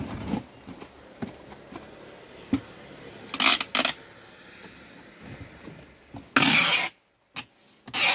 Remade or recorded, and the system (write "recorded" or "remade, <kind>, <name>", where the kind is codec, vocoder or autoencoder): recorded